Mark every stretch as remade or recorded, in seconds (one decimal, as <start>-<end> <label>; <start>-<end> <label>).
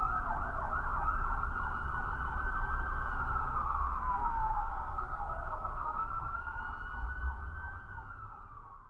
0.0-3.5 recorded; 3.5-6.6 remade; 6.6-8.9 recorded